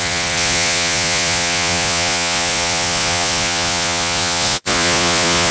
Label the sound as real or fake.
fake